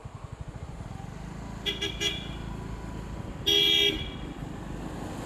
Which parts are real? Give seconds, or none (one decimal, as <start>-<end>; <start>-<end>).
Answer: 0.0-5.3